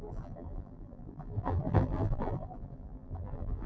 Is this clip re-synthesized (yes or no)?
yes